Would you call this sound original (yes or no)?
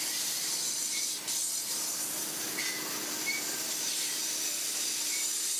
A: no